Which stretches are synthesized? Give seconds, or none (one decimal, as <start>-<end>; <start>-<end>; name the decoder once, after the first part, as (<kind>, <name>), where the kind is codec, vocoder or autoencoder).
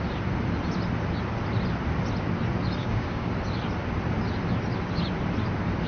2.8-3.3 (codec, DAC)